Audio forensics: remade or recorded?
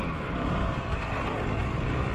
recorded